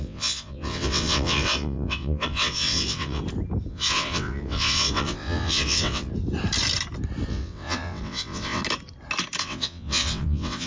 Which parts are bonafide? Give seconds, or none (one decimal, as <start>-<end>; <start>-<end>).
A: 3.2-3.7; 6.1-7.3; 8.6-9.4